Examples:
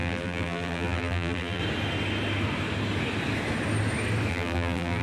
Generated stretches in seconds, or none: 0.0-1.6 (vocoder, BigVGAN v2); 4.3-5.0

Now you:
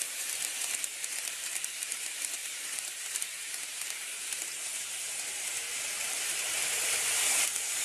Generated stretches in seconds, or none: 0.0-7.8 (vocoder, BigVGAN v2)

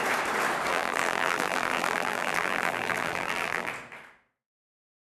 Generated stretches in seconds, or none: 0.7-3.7 (vocoder, BigVGAN v2)

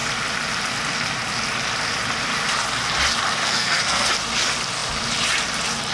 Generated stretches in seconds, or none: 3.4-4.1 (codec, SNAC)

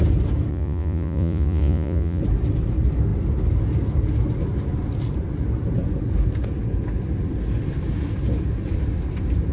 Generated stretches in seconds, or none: 0.5-2.2 (vocoder, Vocos)

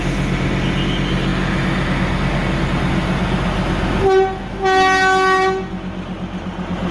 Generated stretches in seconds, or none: none

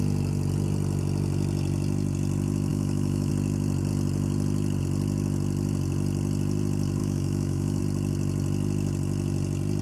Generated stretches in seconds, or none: 2.7-3.3 (autoencoder, DAC-VAE); 7.0-7.8

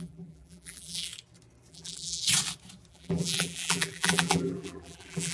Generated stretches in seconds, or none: 0.0-1.1 (vocoder, BigVGAN v2); 1.7-2.2; 2.9-5.3